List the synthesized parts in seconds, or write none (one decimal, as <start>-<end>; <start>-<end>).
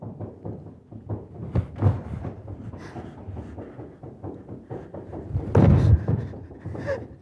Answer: none